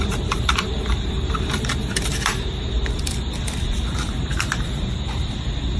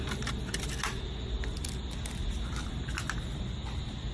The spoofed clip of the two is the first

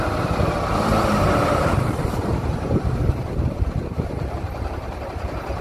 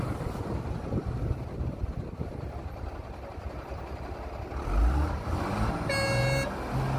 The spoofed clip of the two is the first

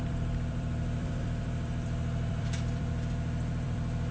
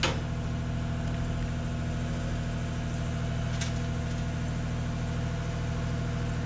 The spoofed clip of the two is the first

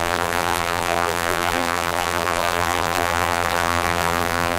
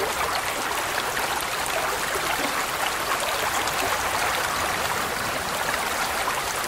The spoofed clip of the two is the first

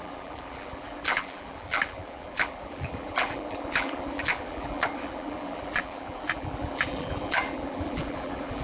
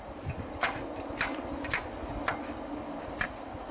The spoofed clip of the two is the first